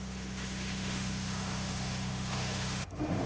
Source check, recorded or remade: remade